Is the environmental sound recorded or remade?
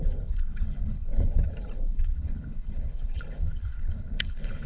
remade